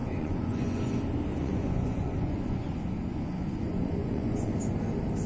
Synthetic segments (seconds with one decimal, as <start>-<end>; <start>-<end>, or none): 0.0-0.9; 1.3-4.5